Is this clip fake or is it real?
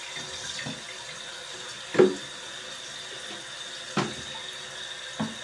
real